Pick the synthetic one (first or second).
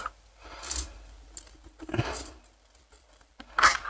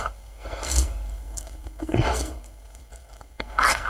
second